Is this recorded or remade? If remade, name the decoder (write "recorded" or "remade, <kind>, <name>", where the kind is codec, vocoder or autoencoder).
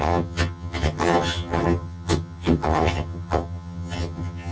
remade, vocoder, HiFi-GAN